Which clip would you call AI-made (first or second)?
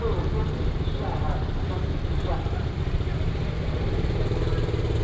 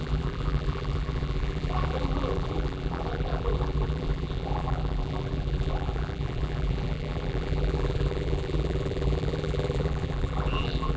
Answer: second